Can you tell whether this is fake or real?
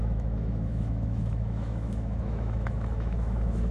fake